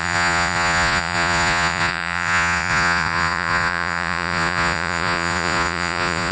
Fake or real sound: fake